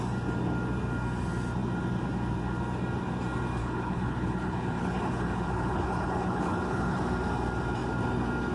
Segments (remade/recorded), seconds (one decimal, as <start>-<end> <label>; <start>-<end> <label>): 0.0-3.6 recorded; 3.6-7.0 remade; 7.0-8.5 recorded